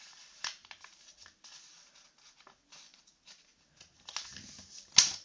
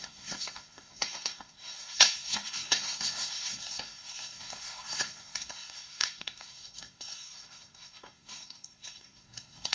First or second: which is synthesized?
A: second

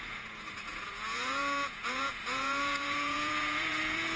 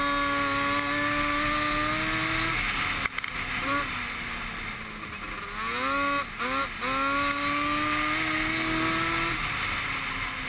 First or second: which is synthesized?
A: first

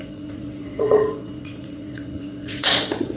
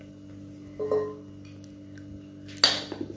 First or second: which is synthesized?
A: first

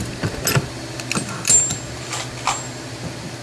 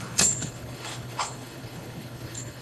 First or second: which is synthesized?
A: second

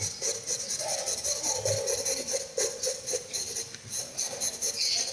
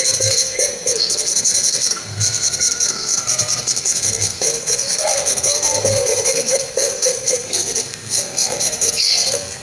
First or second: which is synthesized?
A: second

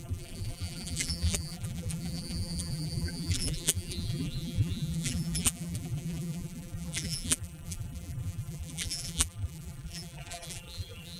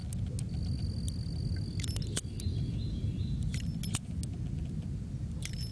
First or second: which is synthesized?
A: first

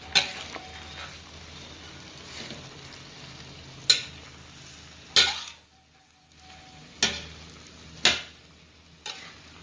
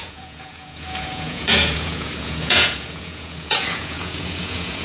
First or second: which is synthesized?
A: second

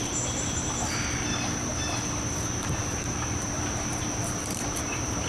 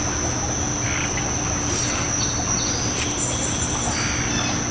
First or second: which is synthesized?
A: first